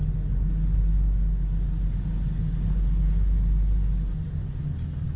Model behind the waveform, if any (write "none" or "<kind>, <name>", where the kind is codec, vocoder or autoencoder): none